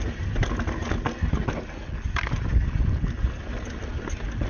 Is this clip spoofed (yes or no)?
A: no